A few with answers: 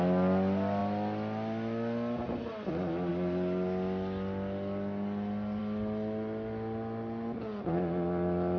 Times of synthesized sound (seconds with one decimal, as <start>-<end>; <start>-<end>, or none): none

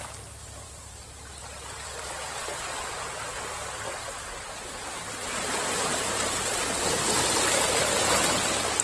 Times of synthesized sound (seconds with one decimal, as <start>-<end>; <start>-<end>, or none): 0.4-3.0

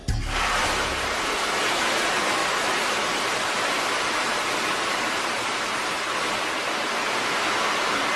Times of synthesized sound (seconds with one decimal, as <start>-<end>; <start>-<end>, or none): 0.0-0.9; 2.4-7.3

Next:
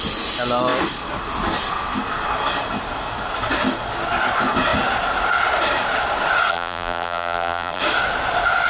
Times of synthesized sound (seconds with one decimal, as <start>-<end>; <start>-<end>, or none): 6.5-7.8